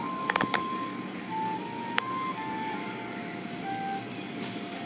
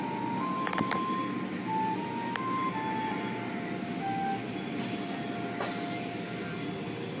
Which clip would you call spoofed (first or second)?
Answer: first